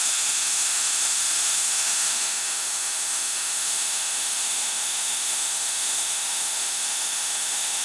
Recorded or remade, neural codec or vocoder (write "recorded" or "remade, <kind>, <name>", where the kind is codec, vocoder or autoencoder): remade, autoencoder, DAC-VAE